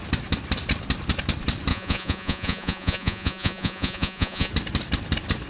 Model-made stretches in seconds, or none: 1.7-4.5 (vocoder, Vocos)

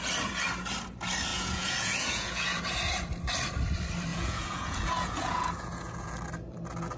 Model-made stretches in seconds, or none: 1.3-2.6 (vocoder, Vocos); 4.1-6.1

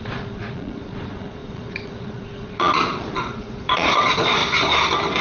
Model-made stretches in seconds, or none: 0.0-4.4 (vocoder, Vocos)

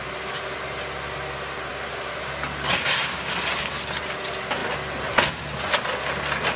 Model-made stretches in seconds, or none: none